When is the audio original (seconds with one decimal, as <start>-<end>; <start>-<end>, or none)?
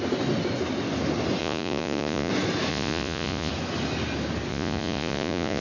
0.0-1.4; 2.3-2.7; 3.5-4.5